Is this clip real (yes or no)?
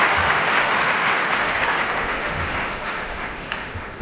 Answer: no